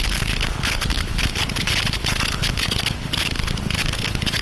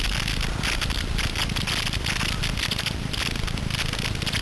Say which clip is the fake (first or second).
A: first